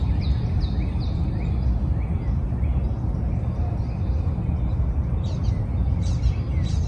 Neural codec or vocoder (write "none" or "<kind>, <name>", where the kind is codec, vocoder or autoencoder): none